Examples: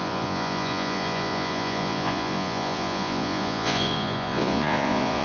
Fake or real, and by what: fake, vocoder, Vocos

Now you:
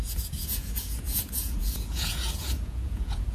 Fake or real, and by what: fake, vocoder, Vocos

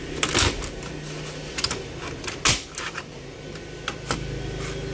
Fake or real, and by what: real